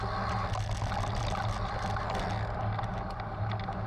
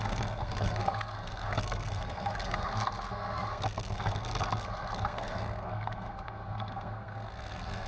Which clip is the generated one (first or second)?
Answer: second